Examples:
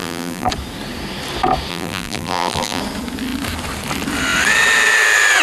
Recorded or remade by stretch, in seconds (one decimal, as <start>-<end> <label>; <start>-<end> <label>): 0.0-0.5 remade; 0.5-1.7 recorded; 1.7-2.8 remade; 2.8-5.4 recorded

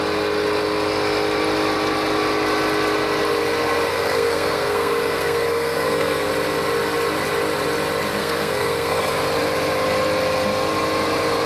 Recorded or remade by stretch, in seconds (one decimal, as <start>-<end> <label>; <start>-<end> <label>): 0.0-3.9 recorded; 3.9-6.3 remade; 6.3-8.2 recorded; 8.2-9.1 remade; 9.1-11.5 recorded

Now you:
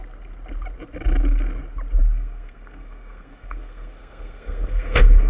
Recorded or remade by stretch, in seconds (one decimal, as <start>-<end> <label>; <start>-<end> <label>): 0.0-2.0 recorded; 2.0-5.3 remade

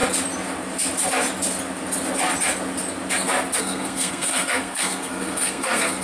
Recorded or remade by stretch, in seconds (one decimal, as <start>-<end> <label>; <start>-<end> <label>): 0.0-3.6 recorded; 3.6-6.0 remade

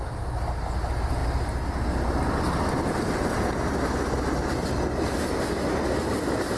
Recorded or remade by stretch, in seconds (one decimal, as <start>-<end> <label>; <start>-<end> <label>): 0.0-6.6 recorded